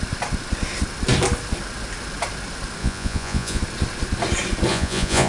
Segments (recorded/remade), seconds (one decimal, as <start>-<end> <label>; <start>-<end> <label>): 0.0-2.8 recorded; 2.8-3.6 remade; 3.6-4.7 recorded; 4.7-5.3 remade